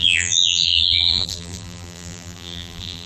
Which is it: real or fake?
fake